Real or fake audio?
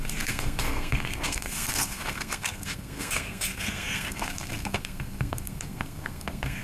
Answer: fake